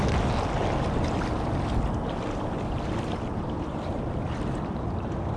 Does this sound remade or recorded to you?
recorded